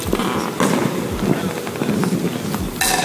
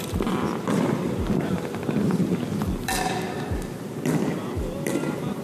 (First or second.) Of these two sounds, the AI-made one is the second